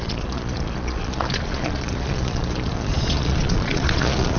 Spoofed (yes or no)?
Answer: yes